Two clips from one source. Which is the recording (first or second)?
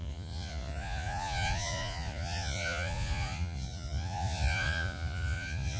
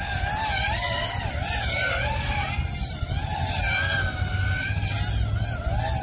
second